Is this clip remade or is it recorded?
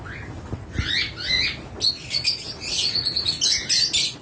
recorded